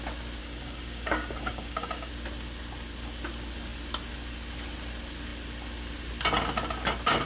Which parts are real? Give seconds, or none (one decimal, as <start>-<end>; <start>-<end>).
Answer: 0.0-0.4; 2.1-7.3